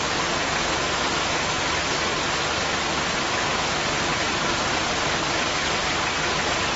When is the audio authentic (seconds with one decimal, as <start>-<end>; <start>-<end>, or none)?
0.0-6.8